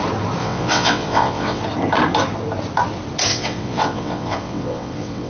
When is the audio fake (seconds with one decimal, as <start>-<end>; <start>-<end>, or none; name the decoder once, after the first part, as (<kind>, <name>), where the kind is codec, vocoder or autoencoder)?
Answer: 0.4-1.6 (vocoder, WaveNeXt); 3.3-5.3